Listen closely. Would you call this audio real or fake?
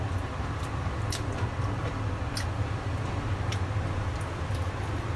real